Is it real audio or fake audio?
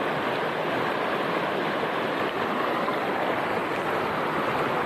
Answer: real